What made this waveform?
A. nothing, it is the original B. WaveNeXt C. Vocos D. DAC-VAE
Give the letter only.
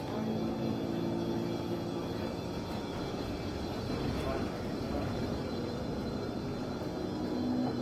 A